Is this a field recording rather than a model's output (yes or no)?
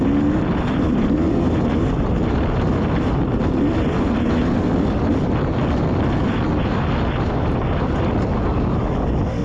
yes